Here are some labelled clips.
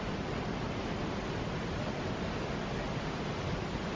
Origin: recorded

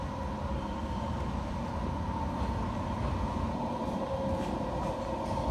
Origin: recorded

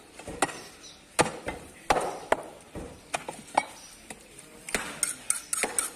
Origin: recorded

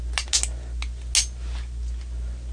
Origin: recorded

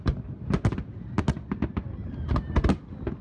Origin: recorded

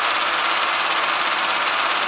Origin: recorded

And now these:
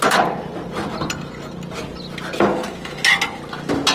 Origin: recorded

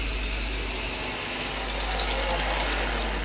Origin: recorded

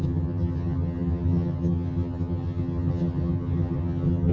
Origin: remade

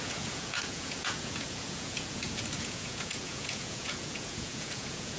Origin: remade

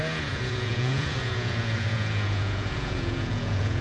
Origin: remade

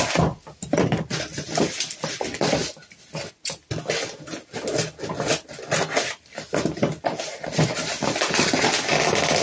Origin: recorded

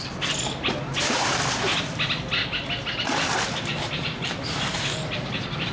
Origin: recorded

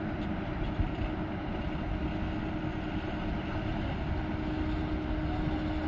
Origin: recorded